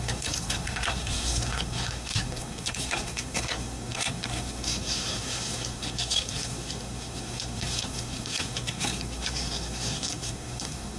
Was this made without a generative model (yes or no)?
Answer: no